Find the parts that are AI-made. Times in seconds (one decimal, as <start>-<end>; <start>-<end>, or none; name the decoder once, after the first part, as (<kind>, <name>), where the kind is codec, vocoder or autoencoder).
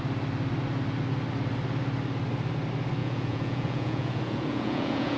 3.0-5.2 (vocoder, Vocos)